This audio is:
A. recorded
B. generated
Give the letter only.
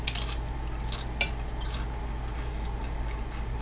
A